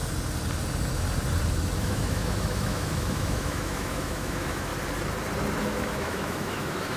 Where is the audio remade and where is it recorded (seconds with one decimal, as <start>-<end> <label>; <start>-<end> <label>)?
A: 0.0-1.8 recorded; 1.8-4.7 remade; 4.7-5.6 recorded; 5.6-7.0 remade